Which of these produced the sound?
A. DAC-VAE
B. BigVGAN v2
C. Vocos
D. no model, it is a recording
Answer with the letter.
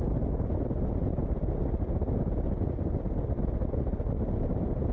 D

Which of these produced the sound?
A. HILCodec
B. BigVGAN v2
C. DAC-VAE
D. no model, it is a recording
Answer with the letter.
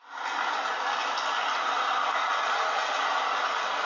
D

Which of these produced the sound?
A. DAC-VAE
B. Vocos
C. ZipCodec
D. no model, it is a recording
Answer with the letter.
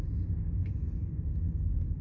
D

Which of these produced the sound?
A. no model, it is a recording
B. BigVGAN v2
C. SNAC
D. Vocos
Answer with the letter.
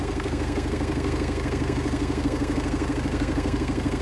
C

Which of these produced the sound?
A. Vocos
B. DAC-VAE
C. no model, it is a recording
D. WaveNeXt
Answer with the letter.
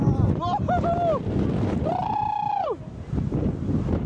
C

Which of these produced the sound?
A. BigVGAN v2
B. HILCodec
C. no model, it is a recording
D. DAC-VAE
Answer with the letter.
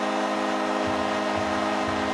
C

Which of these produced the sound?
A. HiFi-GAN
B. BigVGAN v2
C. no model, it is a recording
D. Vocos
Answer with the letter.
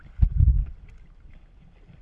C